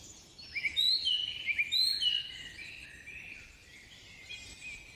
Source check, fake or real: real